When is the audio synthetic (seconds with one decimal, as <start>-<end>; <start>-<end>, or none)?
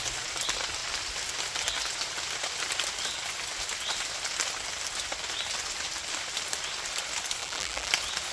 7.4-7.9